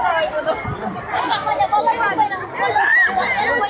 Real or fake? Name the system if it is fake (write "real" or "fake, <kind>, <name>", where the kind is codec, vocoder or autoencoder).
real